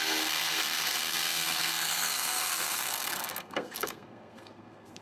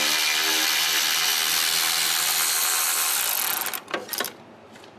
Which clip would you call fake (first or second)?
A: first